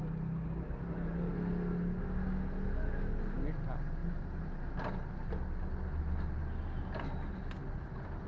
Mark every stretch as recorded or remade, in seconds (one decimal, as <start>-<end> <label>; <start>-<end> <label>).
0.0-8.3 recorded